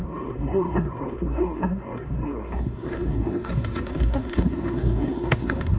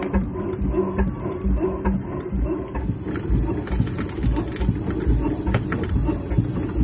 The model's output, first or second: first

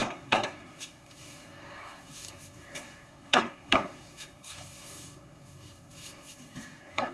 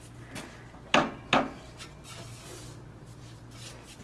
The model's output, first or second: first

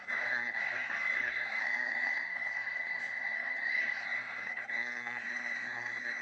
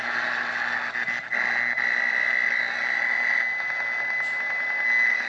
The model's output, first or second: first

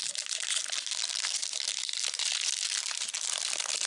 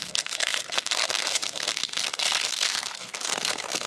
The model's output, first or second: second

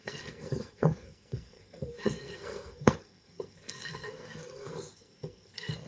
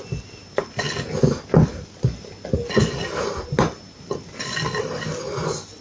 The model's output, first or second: first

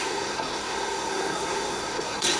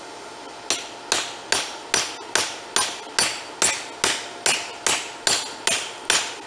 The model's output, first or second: first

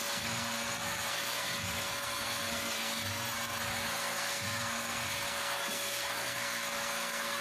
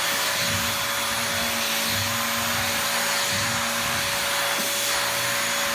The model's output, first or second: first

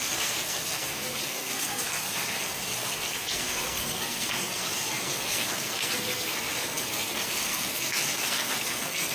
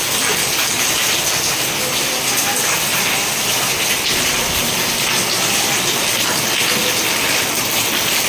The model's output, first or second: first